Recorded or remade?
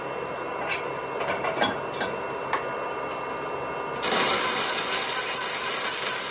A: recorded